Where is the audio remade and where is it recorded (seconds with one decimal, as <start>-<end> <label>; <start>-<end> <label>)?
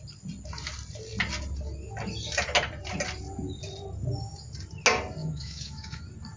0.0-5.2 recorded; 5.2-6.0 remade; 6.0-6.4 recorded